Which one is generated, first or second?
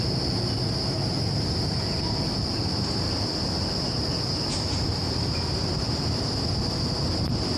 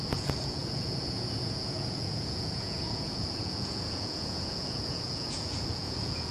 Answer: second